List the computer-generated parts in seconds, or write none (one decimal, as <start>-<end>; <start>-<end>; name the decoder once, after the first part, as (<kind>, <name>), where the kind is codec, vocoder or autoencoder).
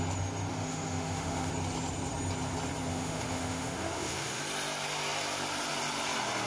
0.5-1.5 (autoencoder, DAC-VAE); 2.9-4.4